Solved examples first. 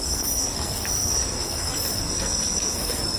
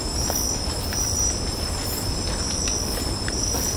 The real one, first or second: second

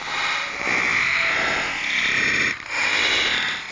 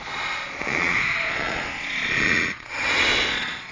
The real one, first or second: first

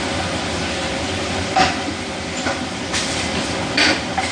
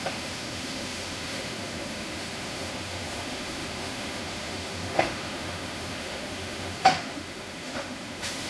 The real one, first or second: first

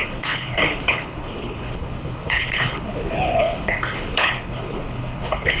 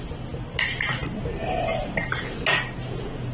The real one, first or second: second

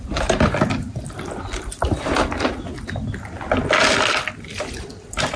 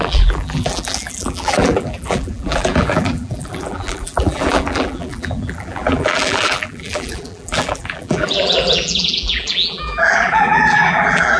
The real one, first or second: first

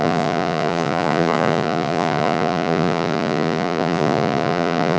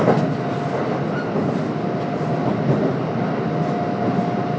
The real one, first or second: second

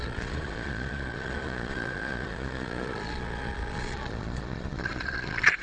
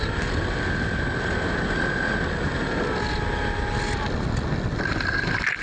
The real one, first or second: second